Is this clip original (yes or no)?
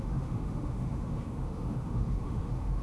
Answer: no